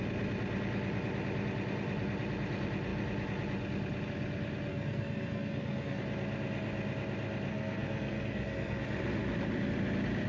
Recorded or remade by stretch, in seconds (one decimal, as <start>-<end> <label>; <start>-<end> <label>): 0.0-4.7 recorded; 4.7-6.0 remade; 6.0-7.5 recorded; 7.5-8.8 remade; 8.8-10.3 recorded